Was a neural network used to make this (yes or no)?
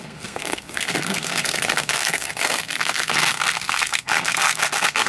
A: yes